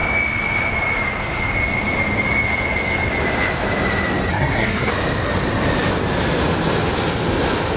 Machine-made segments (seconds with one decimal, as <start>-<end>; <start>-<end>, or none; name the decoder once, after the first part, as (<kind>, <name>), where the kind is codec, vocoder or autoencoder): 4.3-4.9 (codec, SNAC)